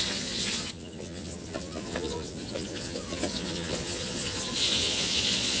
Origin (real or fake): fake